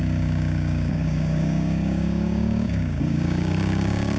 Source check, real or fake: fake